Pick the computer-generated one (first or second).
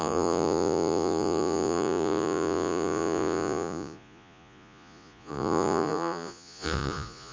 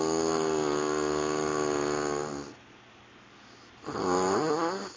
first